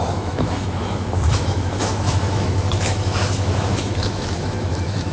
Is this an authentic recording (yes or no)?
no